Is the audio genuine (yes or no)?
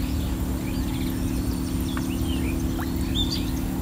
yes